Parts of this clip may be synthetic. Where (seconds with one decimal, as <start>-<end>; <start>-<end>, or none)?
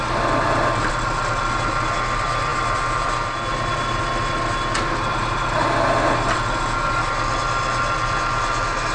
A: none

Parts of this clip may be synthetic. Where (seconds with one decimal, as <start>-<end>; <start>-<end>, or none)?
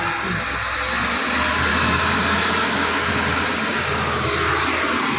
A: 1.7-3.1; 3.5-4.3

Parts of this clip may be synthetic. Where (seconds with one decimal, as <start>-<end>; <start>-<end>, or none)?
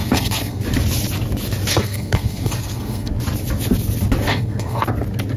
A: 0.0-0.6; 1.7-3.1; 4.3-4.8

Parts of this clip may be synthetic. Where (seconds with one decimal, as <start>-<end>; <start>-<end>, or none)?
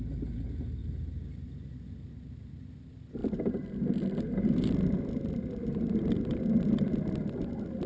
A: none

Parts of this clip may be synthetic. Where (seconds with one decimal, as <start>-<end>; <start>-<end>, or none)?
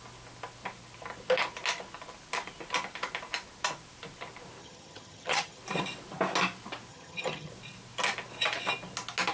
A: 4.6-5.6; 6.9-7.5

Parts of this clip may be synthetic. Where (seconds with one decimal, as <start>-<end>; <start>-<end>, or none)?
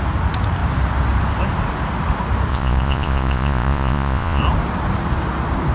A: 2.5-4.4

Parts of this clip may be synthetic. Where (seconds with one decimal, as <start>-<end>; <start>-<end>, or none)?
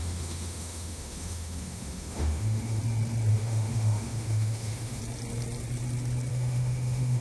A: 0.0-2.8; 3.3-5.0; 6.3-7.2